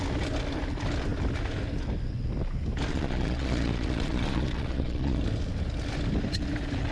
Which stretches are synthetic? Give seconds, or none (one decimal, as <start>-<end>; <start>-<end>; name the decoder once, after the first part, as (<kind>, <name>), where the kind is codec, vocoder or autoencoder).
2.9-5.2 (vocoder, Vocos)